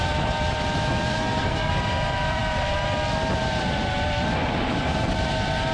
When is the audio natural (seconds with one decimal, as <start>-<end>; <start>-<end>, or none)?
0.0-1.1; 1.7-5.7